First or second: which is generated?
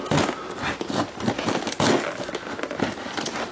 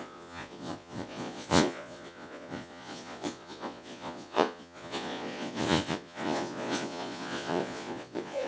second